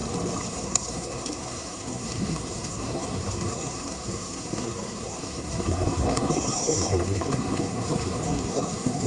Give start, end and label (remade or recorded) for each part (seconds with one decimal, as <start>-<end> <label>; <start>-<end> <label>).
0.0-0.5 recorded; 0.5-9.1 remade